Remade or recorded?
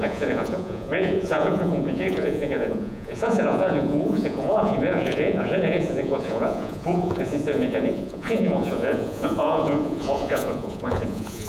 remade